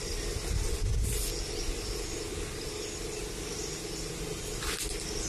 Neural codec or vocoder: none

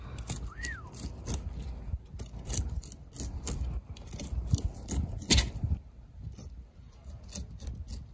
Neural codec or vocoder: none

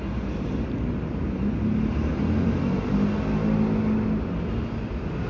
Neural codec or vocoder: none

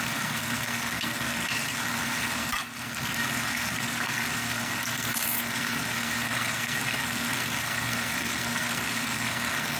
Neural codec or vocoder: codec, SNAC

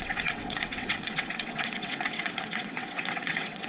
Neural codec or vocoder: vocoder, WaveNeXt